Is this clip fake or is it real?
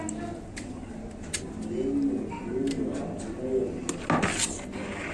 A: real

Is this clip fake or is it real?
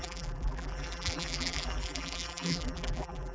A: fake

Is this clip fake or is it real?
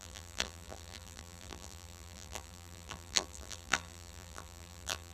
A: fake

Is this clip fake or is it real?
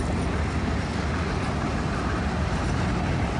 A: real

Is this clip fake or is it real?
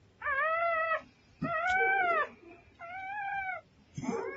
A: real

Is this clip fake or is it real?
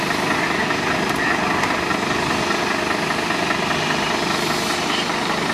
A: real